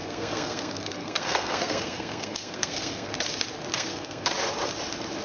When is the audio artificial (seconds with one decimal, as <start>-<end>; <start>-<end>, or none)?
0.0-3.1; 3.7-4.3

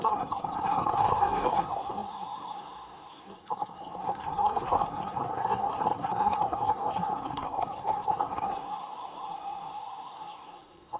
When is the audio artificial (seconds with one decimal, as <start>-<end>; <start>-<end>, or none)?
0.0-11.0